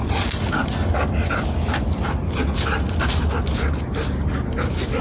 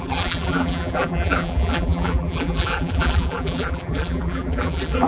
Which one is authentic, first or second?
first